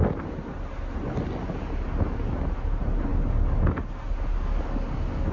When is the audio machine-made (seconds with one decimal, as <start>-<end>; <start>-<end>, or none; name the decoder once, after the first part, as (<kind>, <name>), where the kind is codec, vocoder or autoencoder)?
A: none